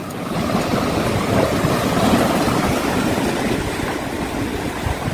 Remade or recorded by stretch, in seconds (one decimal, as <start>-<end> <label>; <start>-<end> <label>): 0.0-4.5 recorded; 4.5-5.1 remade